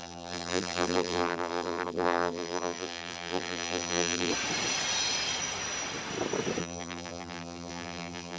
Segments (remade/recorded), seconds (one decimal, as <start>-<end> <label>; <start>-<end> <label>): 0.0-4.3 remade; 4.3-6.6 recorded; 6.6-8.4 remade